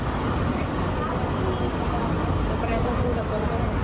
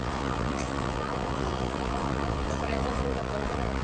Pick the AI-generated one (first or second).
second